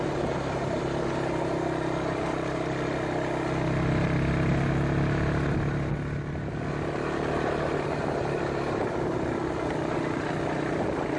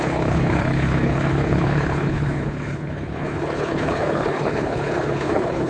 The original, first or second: first